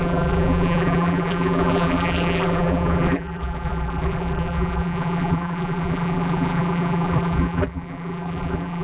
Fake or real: fake